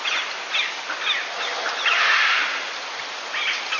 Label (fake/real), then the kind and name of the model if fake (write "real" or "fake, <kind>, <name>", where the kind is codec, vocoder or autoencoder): real